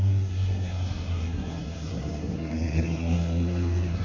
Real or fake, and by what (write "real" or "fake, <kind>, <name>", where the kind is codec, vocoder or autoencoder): fake, codec, SNAC